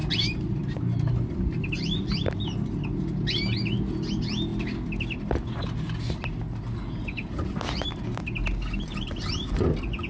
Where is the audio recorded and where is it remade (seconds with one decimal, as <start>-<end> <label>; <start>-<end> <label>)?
0.0-10.1 recorded